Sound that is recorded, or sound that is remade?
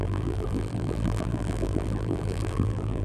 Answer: remade